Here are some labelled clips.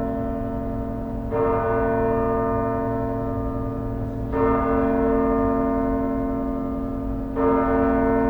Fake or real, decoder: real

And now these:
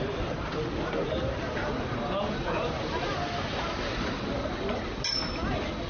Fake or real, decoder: real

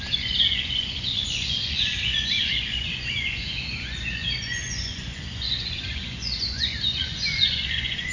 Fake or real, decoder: fake, vocoder, Vocos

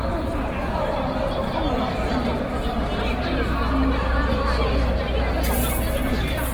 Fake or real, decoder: real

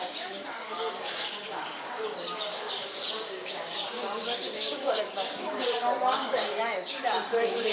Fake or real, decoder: fake, codec, DAC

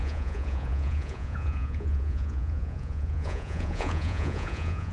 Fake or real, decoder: fake, vocoder, Vocos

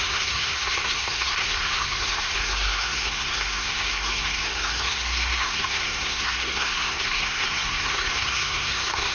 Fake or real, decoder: fake, codec, SNAC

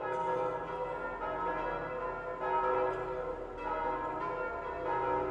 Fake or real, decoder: real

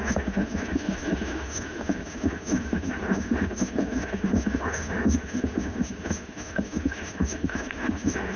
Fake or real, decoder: fake, autoencoder, DAC-VAE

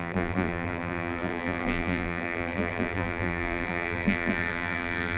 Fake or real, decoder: fake, vocoder, BigVGAN v2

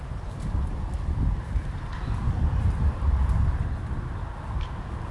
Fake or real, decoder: real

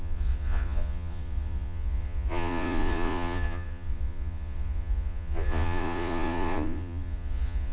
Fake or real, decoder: fake, vocoder, Vocos